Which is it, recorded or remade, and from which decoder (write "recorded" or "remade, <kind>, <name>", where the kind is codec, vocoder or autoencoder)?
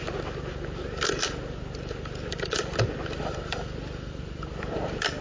recorded